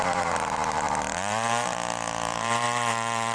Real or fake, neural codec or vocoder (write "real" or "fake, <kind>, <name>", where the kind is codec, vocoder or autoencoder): fake, vocoder, BigVGAN v2